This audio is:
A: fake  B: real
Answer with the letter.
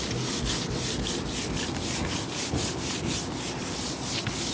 B